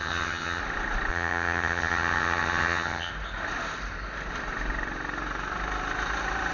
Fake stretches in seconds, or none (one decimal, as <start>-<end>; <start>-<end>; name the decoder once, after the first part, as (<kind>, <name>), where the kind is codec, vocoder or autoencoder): 0.0-0.6 (vocoder, HiFi-GAN); 1.1-3.1